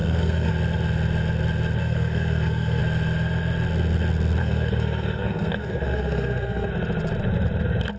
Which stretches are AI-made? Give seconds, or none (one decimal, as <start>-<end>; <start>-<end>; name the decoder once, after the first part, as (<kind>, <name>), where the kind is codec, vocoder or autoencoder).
0.0-0.5 (codec, SNAC); 1.8-2.8; 4.4-6.7